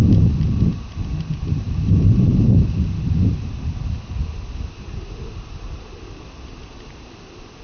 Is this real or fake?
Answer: real